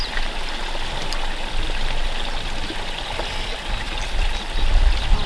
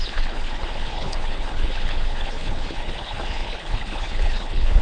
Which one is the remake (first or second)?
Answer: second